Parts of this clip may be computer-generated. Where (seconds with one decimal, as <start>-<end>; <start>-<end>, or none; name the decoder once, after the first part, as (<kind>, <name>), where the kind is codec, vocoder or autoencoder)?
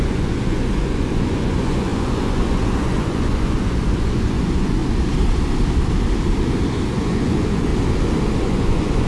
0.0-4.8 (vocoder, Vocos); 6.9-7.7; 8.4-9.1